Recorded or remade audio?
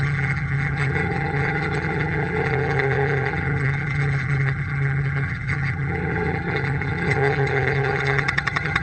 remade